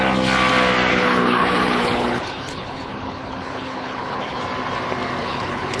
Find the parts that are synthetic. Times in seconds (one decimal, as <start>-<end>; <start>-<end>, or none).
0.9-4.4; 5.2-5.8